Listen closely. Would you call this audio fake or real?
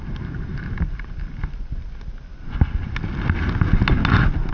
real